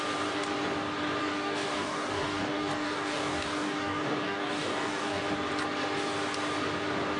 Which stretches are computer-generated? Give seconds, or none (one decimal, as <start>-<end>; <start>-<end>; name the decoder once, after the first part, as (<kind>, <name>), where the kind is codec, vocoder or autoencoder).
1.2-5.2 (codec, DAC)